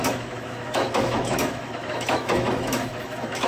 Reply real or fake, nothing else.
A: fake